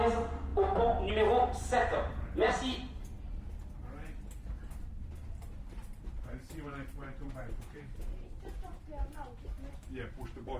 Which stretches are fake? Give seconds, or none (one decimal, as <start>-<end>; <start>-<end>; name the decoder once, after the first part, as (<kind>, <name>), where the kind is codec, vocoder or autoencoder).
4.6-8.4 (vocoder, BigVGAN v2)